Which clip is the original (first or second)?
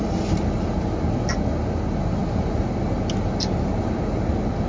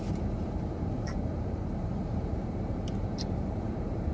first